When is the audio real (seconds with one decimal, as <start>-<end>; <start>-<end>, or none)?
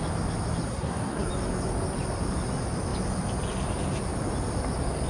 0.0-0.7; 1.3-5.1